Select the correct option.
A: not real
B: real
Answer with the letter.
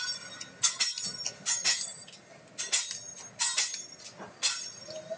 B